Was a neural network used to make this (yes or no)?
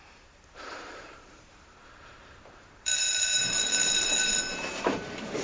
yes